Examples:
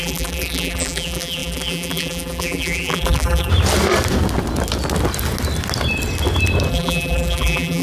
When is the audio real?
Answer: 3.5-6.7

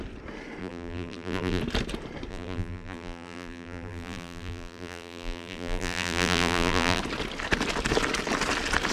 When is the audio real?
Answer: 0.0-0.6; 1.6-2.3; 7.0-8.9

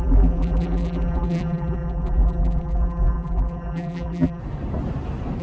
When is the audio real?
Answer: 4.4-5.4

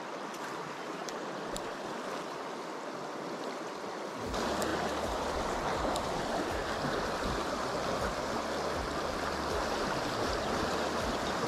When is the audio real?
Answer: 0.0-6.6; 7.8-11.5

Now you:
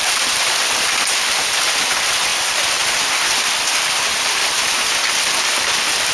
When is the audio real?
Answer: 0.0-6.1

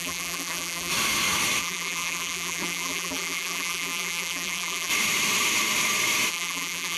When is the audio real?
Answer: 0.9-1.6; 4.9-6.3

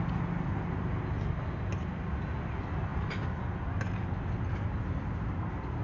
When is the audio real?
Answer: 0.0-2.9; 3.5-5.8

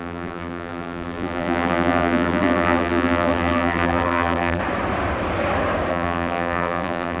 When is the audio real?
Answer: 4.6-5.9